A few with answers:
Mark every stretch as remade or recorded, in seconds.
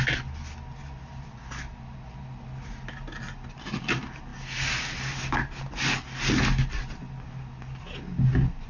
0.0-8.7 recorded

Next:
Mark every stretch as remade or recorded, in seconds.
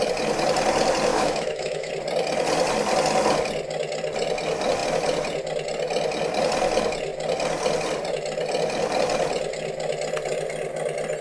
0.0-1.1 recorded; 1.1-1.9 remade; 1.9-11.2 recorded